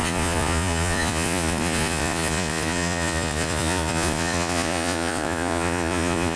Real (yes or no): no